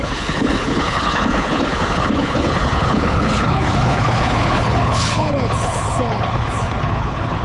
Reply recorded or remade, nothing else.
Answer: remade